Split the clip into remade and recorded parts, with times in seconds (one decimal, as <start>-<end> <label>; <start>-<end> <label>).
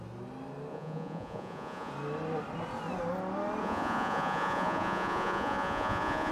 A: 0.0-0.7 recorded; 0.7-1.9 remade; 1.9-3.6 recorded; 3.6-6.3 remade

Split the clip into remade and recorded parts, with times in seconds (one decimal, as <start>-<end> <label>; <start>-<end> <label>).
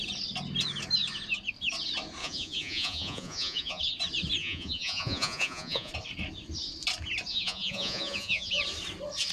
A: 0.0-2.2 recorded; 2.2-3.8 remade; 3.8-4.4 recorded; 4.4-5.9 remade; 5.9-7.3 recorded; 7.3-8.5 remade; 8.5-9.3 recorded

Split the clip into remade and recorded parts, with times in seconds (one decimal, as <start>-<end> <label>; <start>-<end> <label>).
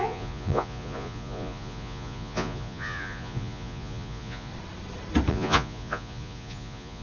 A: 0.0-4.5 remade; 4.5-5.3 recorded; 5.3-7.0 remade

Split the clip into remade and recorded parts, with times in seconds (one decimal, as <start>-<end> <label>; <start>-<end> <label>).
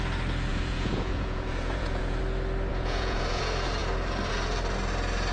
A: 0.0-0.5 recorded; 0.5-2.2 remade; 2.2-2.7 recorded; 2.7-3.4 remade; 3.4-5.3 recorded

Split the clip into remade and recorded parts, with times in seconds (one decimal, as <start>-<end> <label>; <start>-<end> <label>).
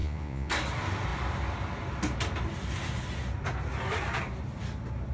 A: 0.0-0.5 remade; 0.5-5.1 recorded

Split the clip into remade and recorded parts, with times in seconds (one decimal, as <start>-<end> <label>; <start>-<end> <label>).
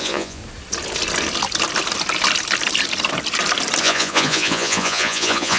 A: 0.0-0.4 remade; 0.4-3.8 recorded; 3.8-5.6 remade